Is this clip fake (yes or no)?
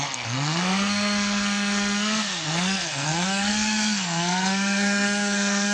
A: yes